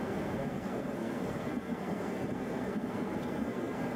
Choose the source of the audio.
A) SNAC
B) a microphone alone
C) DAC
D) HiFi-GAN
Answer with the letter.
A